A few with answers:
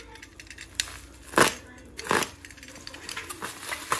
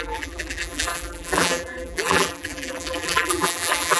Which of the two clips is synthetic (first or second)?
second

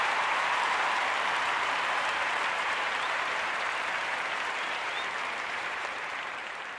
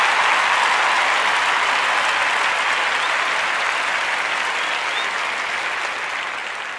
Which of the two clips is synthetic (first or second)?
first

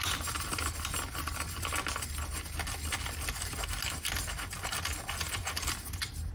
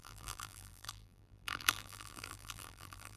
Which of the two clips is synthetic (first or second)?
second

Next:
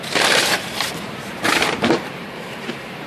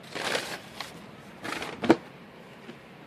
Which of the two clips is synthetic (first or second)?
first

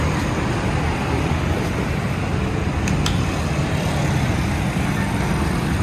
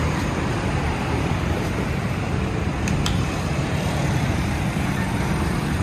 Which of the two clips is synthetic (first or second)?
second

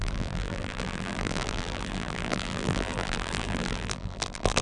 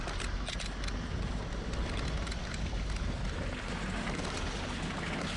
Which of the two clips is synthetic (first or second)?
first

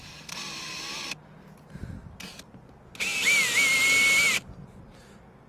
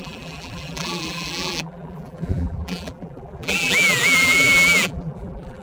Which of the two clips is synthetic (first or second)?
second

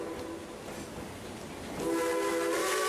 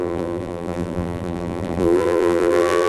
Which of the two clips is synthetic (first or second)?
second